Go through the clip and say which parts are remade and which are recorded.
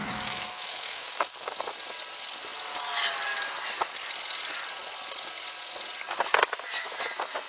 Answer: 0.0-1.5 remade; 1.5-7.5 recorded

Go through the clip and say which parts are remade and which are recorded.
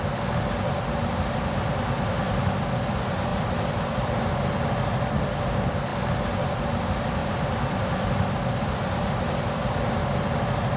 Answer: 0.0-3.3 recorded; 3.3-4.1 remade; 4.1-7.2 recorded; 7.2-9.5 remade; 9.5-10.8 recorded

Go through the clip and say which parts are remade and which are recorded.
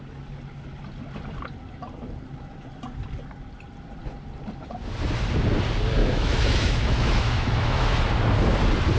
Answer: 0.0-6.0 recorded; 6.0-8.0 remade; 8.0-9.0 recorded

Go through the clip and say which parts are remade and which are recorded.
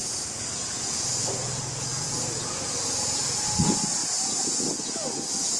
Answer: 0.0-5.6 remade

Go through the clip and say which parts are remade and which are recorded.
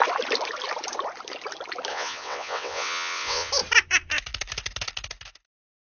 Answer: 0.0-1.9 recorded; 1.9-3.5 remade; 3.5-5.8 recorded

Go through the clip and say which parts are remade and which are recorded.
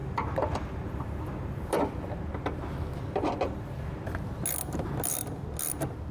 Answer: 0.0-1.8 remade; 1.8-2.9 recorded; 2.9-3.9 remade; 3.9-6.1 recorded